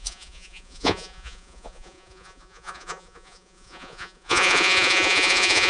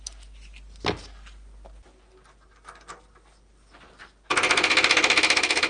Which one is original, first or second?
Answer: second